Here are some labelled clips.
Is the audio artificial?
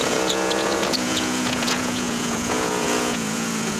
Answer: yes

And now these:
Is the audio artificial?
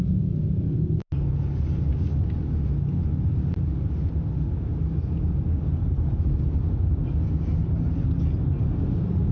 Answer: no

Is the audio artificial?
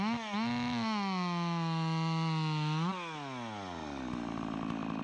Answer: no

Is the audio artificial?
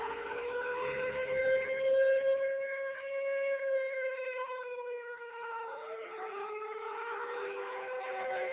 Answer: yes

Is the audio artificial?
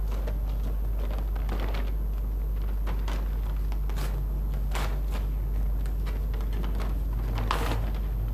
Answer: no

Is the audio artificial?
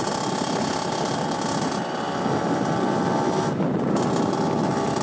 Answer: no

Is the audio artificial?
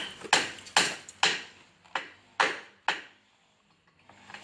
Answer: no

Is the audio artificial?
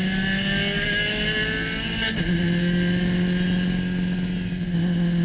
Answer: no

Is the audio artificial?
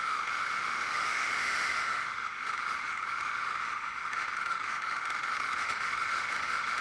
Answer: yes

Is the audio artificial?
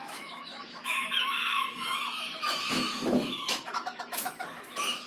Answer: yes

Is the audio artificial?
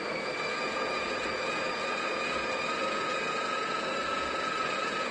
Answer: yes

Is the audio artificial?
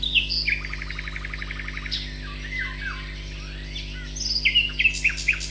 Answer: no